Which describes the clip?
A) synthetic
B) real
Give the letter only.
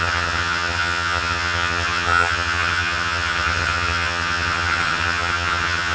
A